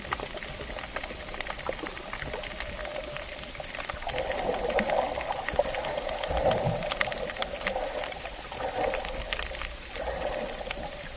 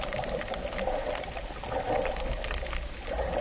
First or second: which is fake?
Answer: first